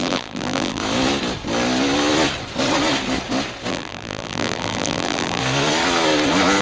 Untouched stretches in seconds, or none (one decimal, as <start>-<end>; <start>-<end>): 0.8-3.7; 5.4-6.6